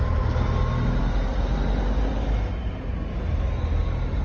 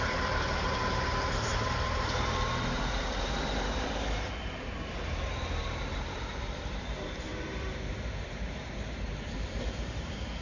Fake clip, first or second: second